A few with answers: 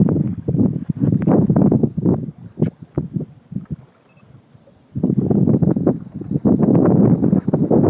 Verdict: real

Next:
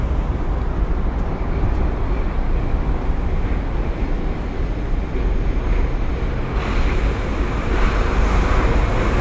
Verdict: real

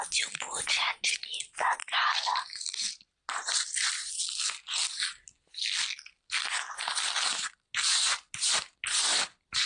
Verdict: real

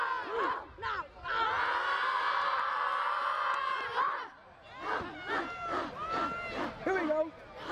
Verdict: real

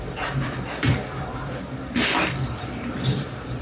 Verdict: fake